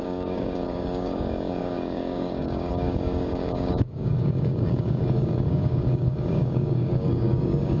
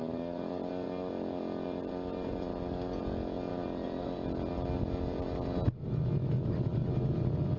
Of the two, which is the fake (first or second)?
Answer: first